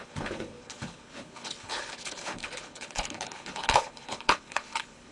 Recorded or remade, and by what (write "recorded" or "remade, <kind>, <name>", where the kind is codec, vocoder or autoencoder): remade, codec, HILCodec